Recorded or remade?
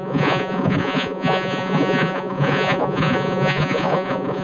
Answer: remade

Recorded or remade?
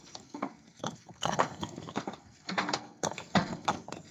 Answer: remade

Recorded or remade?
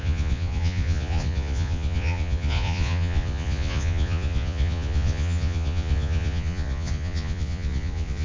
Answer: remade